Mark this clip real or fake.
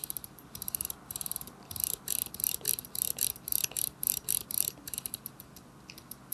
real